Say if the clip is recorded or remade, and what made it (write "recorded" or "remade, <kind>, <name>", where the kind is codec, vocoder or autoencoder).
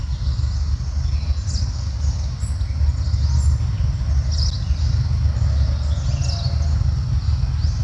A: recorded